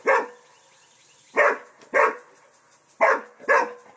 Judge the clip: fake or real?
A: real